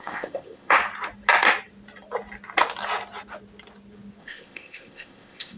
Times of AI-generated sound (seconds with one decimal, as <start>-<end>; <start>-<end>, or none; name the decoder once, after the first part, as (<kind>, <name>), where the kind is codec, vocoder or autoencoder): 0.0-0.8 (codec, ZipCodec); 4.2-5.6